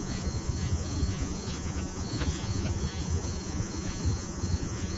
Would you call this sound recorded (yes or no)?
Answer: no